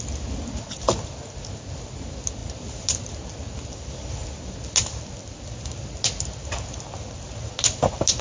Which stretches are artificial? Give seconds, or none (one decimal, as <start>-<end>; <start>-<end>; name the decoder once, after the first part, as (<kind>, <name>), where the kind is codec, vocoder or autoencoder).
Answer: none